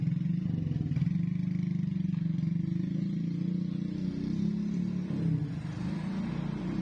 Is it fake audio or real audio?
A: real